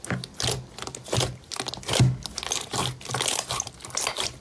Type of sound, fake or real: real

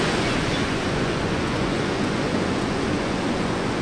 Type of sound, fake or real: fake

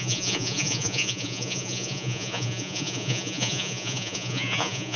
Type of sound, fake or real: fake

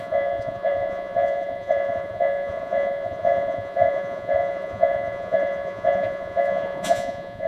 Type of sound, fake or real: fake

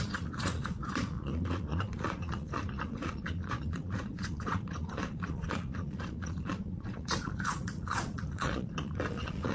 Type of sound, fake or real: fake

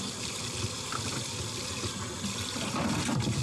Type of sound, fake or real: real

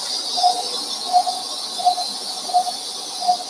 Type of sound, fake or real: real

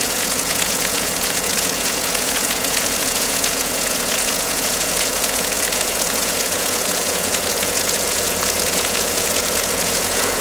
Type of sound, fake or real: fake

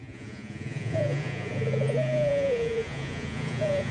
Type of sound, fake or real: fake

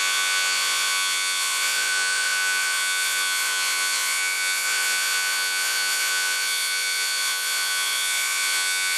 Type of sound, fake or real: fake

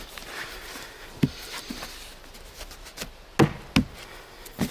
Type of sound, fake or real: real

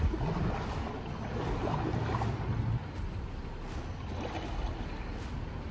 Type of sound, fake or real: real